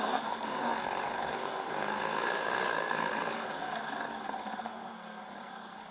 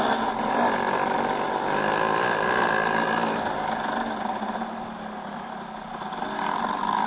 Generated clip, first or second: first